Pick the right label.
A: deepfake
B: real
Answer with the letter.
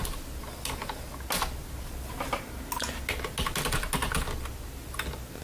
B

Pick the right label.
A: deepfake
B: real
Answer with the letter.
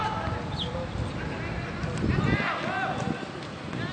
B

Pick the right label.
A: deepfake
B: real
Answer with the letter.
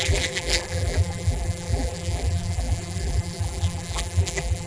A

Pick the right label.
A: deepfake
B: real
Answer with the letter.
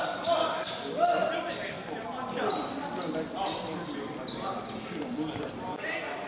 B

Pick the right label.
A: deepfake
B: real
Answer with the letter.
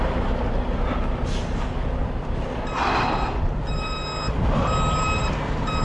B